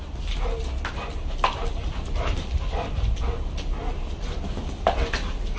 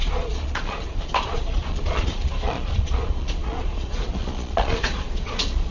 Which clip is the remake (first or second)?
second